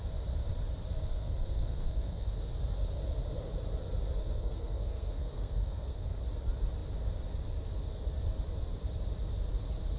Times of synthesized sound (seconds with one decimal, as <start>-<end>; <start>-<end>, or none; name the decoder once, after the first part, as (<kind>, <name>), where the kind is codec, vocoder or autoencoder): 1.1-2.4 (codec, SNAC); 4.2-6.2